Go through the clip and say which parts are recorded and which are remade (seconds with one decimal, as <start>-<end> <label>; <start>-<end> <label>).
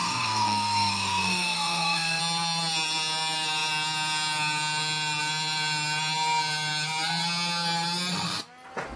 0.0-2.2 remade; 2.2-9.0 recorded